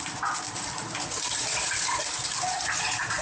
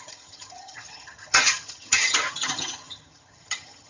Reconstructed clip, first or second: second